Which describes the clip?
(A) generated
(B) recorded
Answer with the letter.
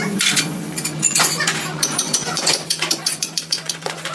A